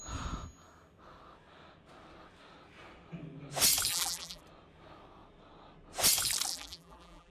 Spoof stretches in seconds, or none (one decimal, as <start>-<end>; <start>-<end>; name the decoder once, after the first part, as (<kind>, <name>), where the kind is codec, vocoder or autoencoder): 3.9-4.4 (vocoder, BigVGAN v2); 6.5-7.3